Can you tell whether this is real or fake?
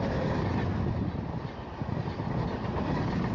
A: real